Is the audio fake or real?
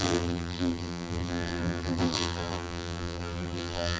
fake